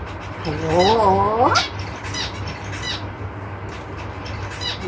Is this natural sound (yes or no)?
yes